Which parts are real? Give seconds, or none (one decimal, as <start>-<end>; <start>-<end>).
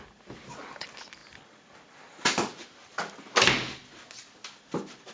0.0-5.1